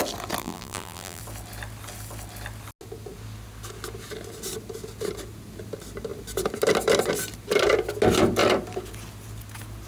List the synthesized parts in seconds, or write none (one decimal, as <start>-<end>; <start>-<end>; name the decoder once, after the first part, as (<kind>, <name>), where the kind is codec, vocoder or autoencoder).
0.4-1.2 (vocoder, BigVGAN v2)